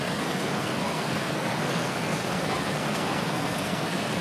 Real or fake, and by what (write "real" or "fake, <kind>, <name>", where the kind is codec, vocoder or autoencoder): fake, codec, SNAC